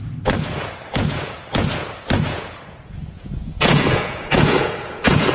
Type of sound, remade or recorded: remade